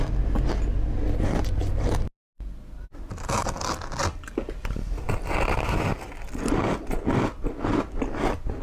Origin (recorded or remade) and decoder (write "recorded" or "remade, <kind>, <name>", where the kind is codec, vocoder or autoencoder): recorded